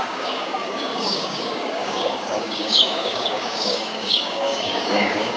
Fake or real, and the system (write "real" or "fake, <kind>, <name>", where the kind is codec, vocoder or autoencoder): fake, codec, DAC